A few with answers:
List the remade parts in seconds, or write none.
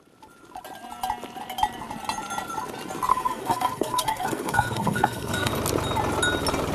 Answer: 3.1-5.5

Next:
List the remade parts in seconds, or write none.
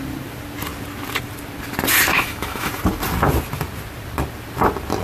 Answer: 2.1-2.7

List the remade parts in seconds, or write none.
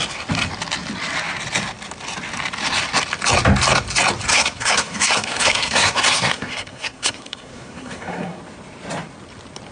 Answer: 4.3-8.4